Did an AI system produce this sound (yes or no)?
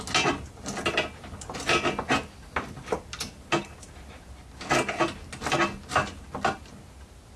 no